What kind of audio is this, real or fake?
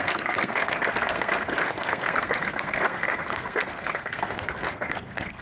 fake